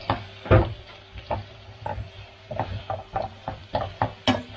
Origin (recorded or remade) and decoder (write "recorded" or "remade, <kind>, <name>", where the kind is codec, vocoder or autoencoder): recorded